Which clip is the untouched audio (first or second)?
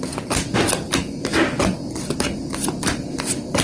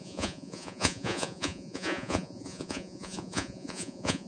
first